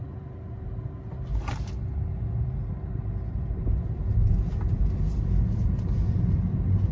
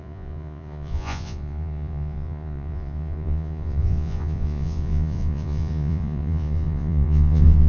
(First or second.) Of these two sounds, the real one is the first